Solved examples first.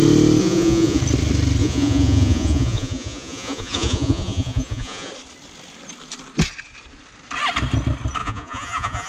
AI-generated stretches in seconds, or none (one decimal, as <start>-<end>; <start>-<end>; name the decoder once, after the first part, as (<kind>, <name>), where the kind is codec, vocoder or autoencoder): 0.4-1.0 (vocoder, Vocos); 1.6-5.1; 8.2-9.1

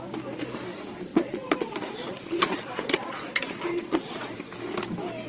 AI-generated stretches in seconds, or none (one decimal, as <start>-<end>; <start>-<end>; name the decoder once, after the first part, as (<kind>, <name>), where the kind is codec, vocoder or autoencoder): 1.1-4.3 (vocoder, Vocos)

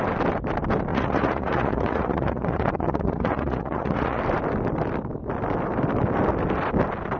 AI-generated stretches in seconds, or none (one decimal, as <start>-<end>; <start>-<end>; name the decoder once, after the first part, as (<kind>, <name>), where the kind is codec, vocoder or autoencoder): 0.9-4.2 (vocoder, Vocos)

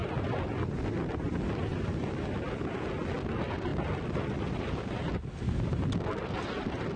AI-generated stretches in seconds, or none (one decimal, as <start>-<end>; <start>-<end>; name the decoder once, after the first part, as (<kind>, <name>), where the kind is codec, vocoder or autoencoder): none

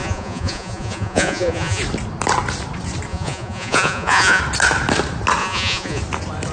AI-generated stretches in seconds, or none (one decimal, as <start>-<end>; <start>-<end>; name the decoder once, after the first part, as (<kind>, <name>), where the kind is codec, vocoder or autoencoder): 0.0-1.8 (vocoder, Vocos); 3.1-4.4; 5.4-6.0